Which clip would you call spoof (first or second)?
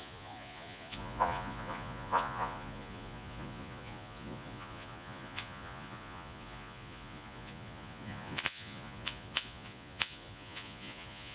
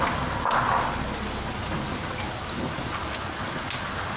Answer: first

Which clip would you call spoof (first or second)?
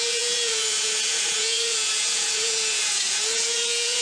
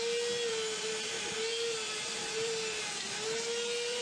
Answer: first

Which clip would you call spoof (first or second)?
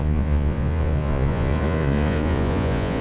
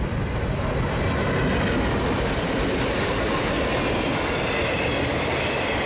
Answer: first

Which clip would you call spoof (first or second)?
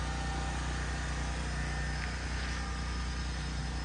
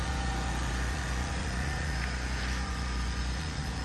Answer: second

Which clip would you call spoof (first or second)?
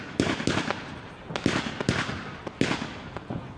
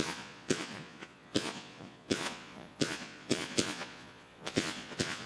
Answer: second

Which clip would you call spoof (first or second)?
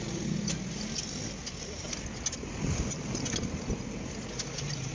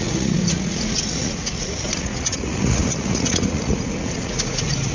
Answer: second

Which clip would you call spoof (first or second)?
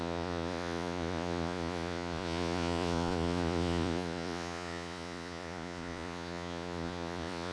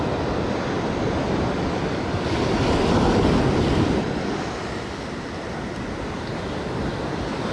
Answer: first